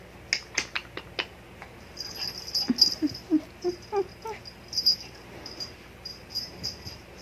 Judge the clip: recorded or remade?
recorded